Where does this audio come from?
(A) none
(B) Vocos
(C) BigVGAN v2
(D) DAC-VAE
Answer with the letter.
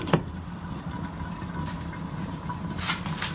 A